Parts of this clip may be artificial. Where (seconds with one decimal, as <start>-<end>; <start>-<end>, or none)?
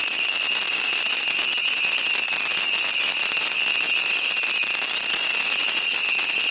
none